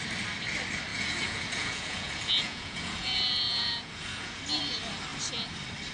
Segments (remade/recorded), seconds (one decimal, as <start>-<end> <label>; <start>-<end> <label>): 0.0-0.9 recorded; 0.9-4.4 remade; 4.4-5.9 recorded